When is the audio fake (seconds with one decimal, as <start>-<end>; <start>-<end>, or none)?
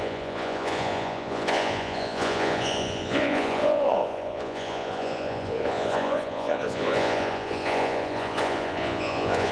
0.0-9.5